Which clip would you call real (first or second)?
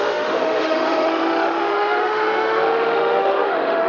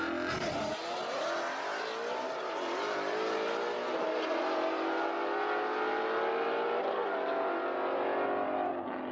second